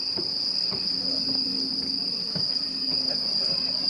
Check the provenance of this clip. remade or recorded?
recorded